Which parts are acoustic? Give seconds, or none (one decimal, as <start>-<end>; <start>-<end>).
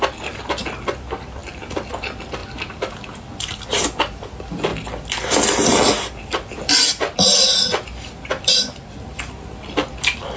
0.0-10.4